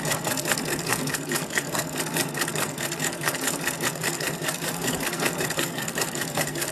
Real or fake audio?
fake